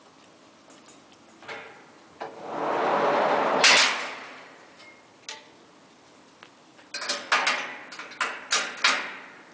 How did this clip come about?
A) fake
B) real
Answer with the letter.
B